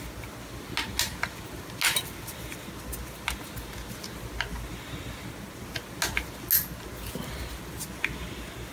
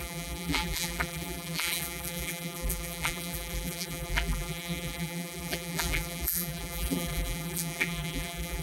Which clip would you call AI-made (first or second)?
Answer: second